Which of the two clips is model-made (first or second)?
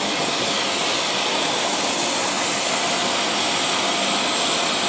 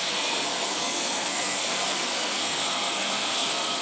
second